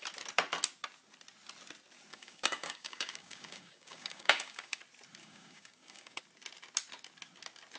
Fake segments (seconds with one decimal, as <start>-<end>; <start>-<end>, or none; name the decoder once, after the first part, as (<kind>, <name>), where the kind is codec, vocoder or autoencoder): 2.1-4.8 (codec, DAC); 5.2-6.2